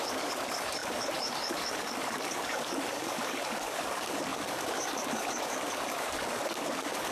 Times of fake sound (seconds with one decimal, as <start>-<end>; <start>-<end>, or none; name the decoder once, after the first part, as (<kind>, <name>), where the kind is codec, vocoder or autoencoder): 0.0-7.1 (codec, DAC)